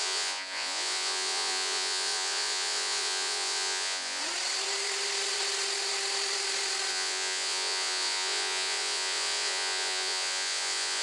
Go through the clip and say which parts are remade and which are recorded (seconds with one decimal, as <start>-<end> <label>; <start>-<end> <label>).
0.0-4.2 remade; 4.2-6.9 recorded; 6.9-11.0 remade